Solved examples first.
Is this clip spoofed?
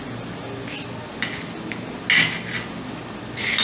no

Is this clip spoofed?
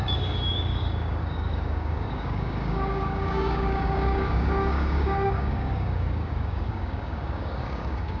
yes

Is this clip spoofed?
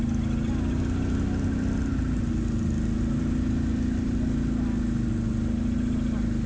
no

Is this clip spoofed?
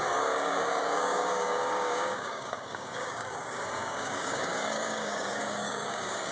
yes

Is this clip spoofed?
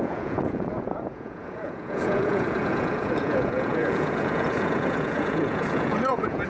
yes